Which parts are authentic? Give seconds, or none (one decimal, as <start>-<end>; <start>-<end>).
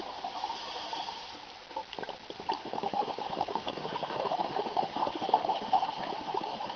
0.0-2.6